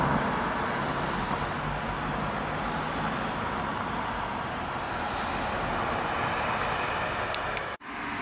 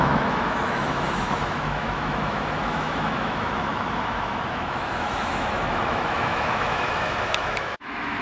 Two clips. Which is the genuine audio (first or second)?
first